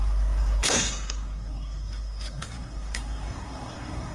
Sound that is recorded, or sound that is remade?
remade